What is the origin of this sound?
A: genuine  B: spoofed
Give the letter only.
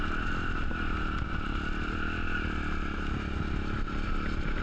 A